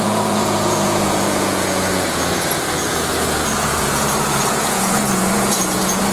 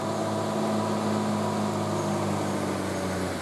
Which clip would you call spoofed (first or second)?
first